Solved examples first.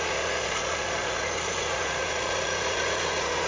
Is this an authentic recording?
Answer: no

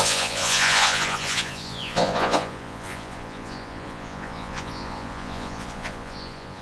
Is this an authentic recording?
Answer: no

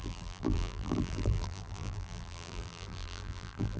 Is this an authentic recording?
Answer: no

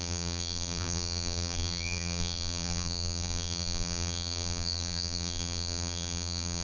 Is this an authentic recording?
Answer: no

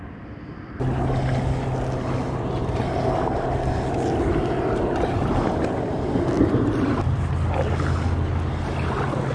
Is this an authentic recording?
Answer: yes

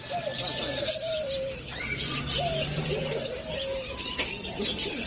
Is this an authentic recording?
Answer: no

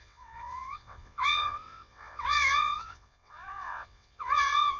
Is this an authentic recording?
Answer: no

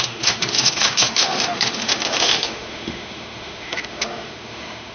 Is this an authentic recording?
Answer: no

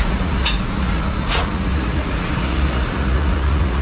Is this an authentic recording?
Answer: no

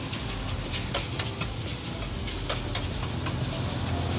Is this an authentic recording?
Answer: yes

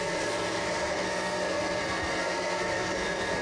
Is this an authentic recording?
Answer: no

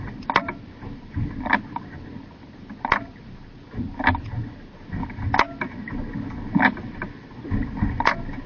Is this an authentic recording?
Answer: yes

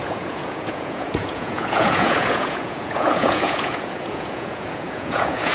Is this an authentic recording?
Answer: no